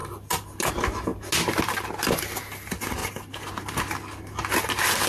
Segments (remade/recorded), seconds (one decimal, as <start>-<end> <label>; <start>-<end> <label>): 0.0-5.1 recorded